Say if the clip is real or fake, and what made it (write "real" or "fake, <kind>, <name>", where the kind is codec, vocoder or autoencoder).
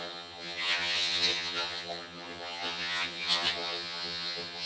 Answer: fake, vocoder, HiFi-GAN